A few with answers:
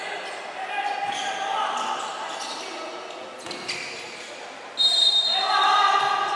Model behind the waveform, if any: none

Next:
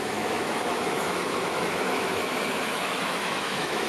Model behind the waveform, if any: autoencoder, DAC-VAE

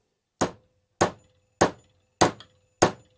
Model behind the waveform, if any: none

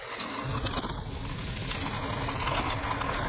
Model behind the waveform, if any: none